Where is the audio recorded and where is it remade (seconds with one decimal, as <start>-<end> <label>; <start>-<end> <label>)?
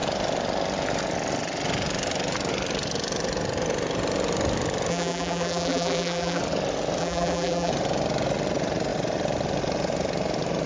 0.0-4.9 recorded; 4.9-6.4 remade; 6.4-7.0 recorded; 7.0-7.7 remade; 7.7-10.7 recorded